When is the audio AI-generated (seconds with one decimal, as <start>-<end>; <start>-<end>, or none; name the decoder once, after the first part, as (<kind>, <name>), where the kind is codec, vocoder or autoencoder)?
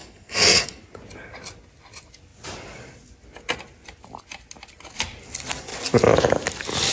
0.0-0.8 (codec, SNAC)